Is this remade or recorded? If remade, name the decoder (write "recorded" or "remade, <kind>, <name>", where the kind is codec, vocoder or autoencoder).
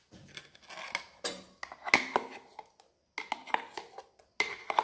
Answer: recorded